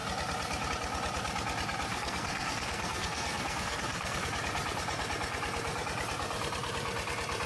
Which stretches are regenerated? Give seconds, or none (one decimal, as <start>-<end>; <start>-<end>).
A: 1.9-4.3

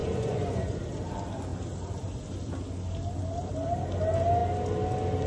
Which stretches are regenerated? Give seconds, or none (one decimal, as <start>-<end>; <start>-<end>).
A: 0.0-0.8

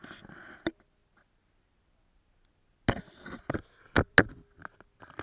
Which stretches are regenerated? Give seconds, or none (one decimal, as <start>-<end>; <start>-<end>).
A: none

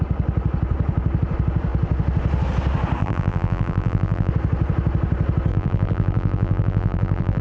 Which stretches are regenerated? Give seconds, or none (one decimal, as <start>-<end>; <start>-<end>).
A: 3.0-4.3; 5.5-7.4

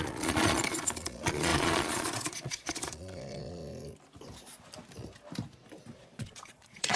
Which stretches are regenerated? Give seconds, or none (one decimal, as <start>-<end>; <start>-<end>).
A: 0.0-3.6; 6.0-7.0

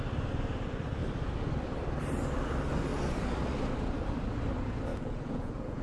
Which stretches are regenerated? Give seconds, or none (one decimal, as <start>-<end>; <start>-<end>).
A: 4.9-5.8